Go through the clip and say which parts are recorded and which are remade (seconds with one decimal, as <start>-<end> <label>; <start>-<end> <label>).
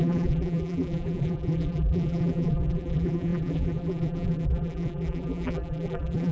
0.0-6.3 remade